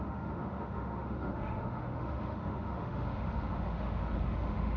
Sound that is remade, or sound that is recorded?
remade